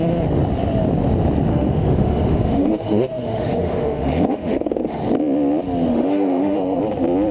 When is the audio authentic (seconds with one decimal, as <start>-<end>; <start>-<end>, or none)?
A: 0.0-1.5; 5.0-5.9; 6.8-7.3